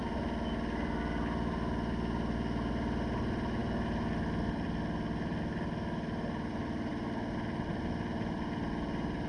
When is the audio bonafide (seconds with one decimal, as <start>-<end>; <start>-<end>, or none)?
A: 0.0-2.7